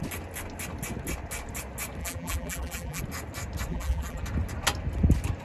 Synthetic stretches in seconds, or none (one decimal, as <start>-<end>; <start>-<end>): 2.0-3.0; 3.7-4.2